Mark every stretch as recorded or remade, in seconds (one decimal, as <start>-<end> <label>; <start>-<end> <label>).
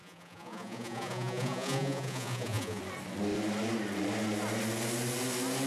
0.0-2.8 remade; 2.8-5.7 recorded